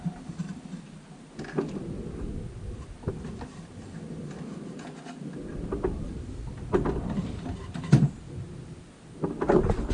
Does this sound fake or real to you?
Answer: real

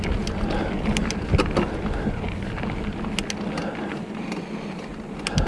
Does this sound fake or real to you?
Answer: real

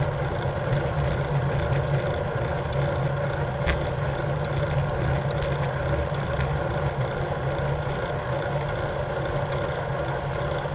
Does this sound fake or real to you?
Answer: real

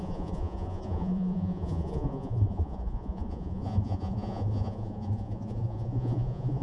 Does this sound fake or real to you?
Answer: fake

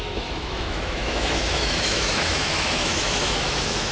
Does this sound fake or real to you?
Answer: fake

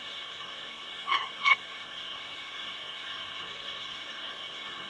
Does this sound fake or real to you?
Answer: fake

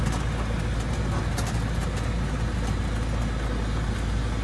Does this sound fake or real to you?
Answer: real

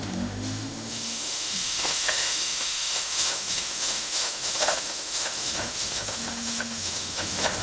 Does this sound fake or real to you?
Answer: fake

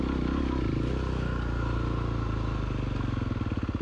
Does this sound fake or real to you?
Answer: real